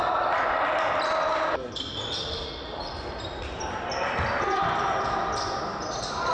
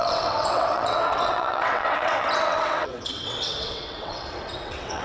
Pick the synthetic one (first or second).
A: second